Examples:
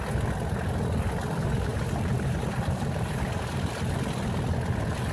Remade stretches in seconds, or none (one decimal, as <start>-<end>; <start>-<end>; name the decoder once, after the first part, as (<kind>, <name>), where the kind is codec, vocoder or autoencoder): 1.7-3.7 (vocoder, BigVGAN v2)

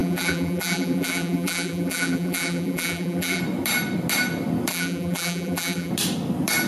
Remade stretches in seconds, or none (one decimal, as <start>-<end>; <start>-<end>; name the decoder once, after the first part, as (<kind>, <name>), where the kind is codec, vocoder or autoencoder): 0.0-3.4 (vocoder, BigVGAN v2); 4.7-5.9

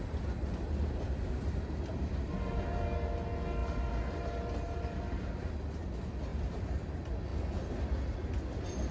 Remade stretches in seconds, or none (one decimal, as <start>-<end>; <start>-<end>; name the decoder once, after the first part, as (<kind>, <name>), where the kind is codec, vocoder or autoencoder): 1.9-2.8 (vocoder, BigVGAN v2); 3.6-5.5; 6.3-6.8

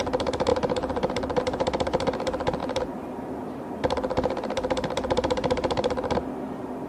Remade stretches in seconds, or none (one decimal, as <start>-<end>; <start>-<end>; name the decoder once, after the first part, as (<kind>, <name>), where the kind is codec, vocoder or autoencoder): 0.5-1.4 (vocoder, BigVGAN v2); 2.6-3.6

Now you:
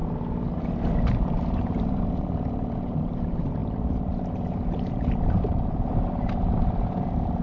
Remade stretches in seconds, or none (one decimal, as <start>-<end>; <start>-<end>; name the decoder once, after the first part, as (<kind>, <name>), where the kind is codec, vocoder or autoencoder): 0.9-7.4 (vocoder, BigVGAN v2)

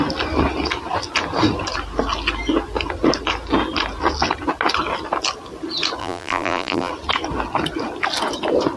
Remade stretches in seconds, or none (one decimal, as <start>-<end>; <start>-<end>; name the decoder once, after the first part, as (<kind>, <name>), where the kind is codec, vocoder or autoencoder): 6.0-6.9 (vocoder, BigVGAN v2)

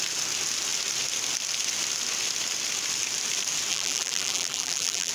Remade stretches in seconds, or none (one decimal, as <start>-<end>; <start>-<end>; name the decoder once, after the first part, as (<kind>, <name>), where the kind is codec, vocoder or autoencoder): 3.7-5.1 (vocoder, BigVGAN v2)

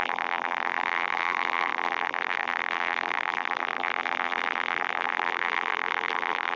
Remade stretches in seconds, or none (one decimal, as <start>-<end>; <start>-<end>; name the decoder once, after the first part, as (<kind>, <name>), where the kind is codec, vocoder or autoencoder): 0.0-6.6 (vocoder, BigVGAN v2)